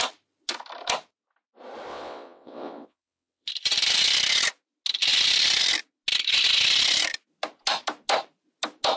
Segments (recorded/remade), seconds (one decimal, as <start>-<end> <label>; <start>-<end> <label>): 0.0-1.9 recorded; 1.9-3.5 remade; 3.5-9.0 recorded